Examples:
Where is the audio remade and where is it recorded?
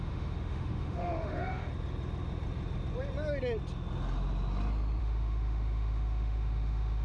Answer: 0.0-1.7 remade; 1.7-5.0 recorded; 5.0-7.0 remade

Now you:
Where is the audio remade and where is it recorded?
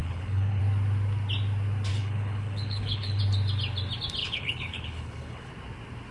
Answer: 0.0-0.6 remade; 0.6-1.9 recorded; 1.9-3.2 remade; 3.2-4.2 recorded; 4.2-5.5 remade; 5.5-6.1 recorded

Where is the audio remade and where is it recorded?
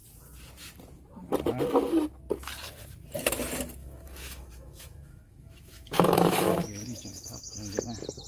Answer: 0.0-3.8 recorded; 3.8-7.8 remade; 7.8-8.3 recorded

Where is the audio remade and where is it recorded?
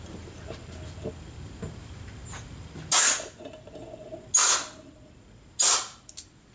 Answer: 0.0-6.5 recorded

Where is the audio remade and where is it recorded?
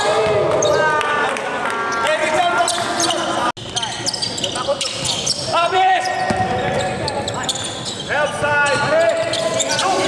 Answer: 0.0-4.7 recorded; 4.7-6.0 remade; 6.0-10.1 recorded